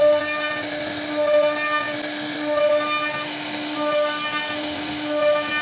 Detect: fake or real real